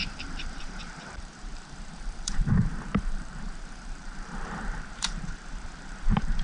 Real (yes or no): no